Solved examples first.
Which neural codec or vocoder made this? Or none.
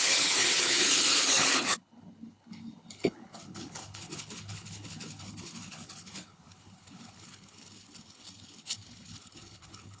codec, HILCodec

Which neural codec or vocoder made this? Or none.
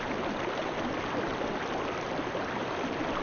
none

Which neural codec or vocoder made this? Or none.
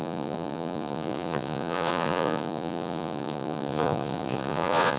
vocoder, Vocos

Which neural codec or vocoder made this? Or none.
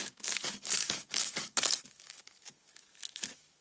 codec, DAC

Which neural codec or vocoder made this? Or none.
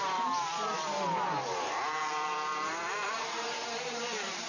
vocoder, BigVGAN v2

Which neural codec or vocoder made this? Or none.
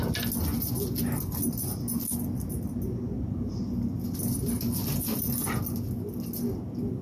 none